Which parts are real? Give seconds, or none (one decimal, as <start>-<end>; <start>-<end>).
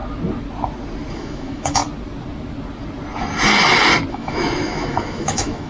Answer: 0.0-1.1; 1.8-4.1